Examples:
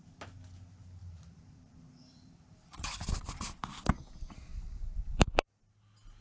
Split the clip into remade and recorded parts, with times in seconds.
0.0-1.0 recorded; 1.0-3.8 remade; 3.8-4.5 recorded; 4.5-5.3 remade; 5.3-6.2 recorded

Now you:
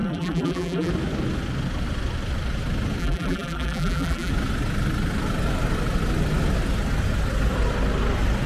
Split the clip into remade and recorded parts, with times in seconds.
0.0-0.9 remade; 0.9-3.0 recorded; 3.0-4.3 remade; 4.3-8.5 recorded

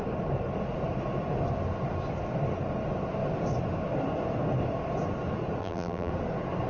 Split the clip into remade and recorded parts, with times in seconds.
0.0-5.6 recorded; 5.6-6.1 remade; 6.1-6.7 recorded

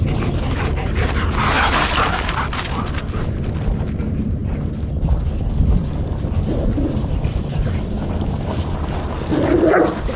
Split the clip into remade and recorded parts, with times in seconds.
0.0-10.2 recorded